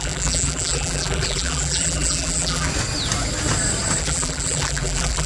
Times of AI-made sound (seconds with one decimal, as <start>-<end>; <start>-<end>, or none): 0.0-2.7; 4.0-5.3